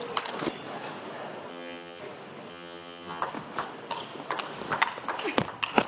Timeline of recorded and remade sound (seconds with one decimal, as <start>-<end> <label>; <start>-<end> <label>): 0.0-1.5 recorded; 1.5-2.0 remade; 2.0-2.5 recorded; 2.5-3.2 remade; 3.2-5.9 recorded